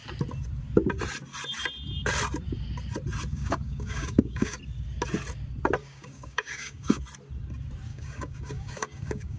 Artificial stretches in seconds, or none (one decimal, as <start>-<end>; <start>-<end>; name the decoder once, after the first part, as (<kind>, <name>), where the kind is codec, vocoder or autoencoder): 3.3-4.6 (codec, DAC); 5.8-7.0; 7.9-9.4